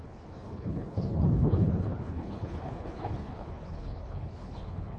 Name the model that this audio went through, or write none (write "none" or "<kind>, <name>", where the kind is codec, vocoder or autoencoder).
codec, HILCodec